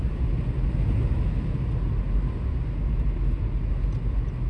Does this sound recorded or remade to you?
recorded